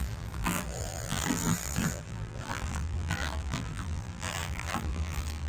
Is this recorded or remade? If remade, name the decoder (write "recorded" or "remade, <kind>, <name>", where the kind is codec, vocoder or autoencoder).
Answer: remade, vocoder, BigVGAN v2